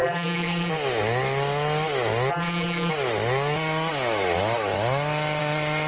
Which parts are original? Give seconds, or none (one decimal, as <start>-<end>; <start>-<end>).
0.7-2.3; 2.9-5.9